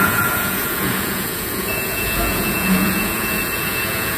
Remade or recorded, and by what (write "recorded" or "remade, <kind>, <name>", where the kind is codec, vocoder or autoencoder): remade, vocoder, Vocos